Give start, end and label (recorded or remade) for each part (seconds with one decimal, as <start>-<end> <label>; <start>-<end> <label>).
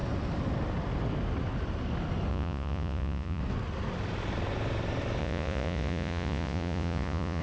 0.0-2.3 recorded; 2.3-3.4 remade; 3.4-5.2 recorded; 5.2-7.4 remade